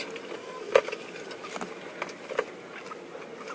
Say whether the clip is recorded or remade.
recorded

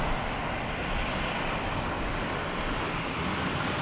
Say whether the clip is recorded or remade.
recorded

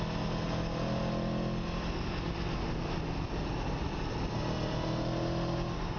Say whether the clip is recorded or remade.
recorded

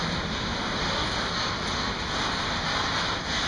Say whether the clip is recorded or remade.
recorded